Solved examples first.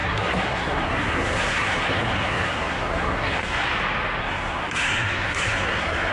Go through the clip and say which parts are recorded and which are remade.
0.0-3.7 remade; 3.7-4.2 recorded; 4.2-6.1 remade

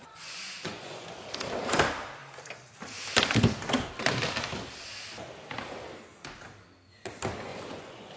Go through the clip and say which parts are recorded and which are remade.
0.0-1.2 remade; 1.2-7.5 recorded; 7.5-8.2 remade